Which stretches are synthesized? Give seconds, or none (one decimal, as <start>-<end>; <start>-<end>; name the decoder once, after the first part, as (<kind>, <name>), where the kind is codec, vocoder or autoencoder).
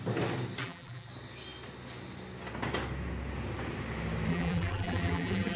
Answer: 0.6-1.1 (vocoder, BigVGAN v2); 4.3-5.6